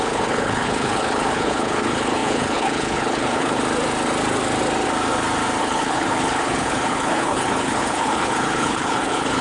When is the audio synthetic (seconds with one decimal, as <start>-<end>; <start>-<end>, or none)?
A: 0.0-3.6; 5.6-9.4